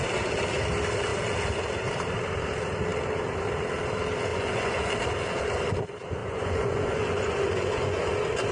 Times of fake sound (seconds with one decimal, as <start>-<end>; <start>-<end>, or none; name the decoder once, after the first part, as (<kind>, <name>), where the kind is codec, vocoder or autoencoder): 4.3-4.9 (vocoder, Vocos); 6.2-8.1